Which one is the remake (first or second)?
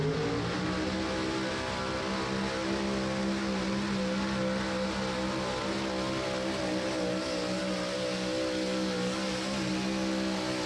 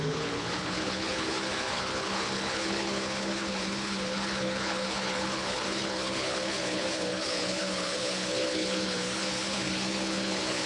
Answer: second